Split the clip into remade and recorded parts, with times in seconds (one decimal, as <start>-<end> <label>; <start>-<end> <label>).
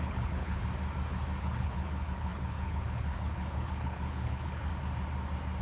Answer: 0.0-0.6 remade; 0.6-1.4 recorded; 1.4-4.7 remade; 4.7-5.6 recorded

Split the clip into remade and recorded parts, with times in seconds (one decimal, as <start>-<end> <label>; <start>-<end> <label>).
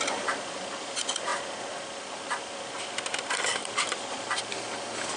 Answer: 0.0-5.2 recorded